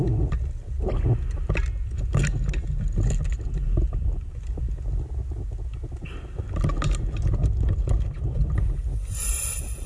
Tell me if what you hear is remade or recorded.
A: recorded